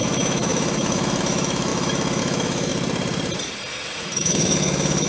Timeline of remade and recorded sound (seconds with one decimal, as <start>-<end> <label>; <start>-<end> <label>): 0.0-2.7 remade; 2.7-4.0 recorded; 4.0-5.1 remade

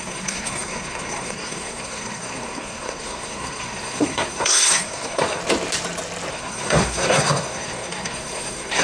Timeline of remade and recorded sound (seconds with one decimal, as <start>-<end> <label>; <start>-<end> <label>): 0.0-5.4 remade; 5.4-6.3 recorded; 6.3-8.8 remade